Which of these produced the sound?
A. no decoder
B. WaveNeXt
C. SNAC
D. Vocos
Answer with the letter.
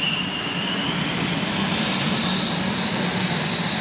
A